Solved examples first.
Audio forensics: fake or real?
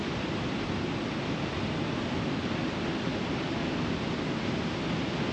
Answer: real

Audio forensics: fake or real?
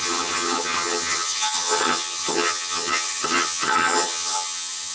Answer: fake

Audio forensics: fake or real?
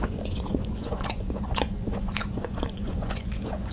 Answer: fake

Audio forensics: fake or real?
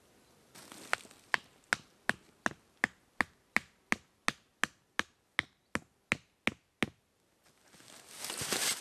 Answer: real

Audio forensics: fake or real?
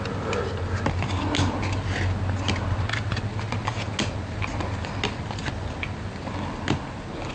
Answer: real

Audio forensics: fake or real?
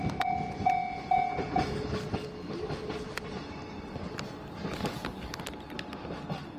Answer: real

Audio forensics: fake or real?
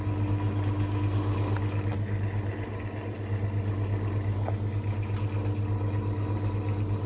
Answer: real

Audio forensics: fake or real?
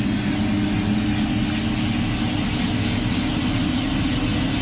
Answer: real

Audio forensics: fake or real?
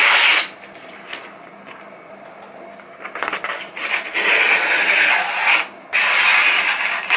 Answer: real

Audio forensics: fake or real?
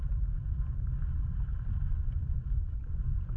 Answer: real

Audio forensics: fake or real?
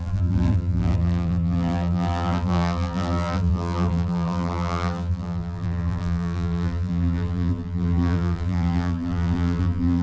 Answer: fake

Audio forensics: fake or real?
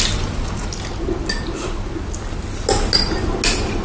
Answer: real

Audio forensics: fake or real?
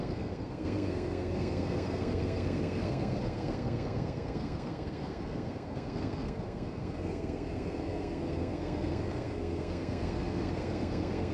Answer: fake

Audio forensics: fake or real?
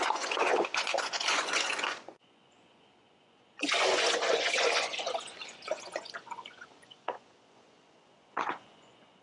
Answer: fake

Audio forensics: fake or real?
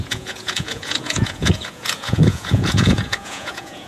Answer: fake